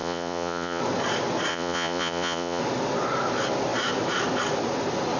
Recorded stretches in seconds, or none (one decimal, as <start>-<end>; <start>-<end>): 0.8-1.5; 2.6-5.2